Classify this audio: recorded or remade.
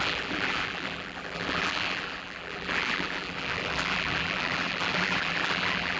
remade